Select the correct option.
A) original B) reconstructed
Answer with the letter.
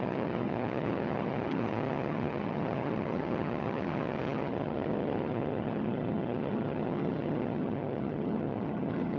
B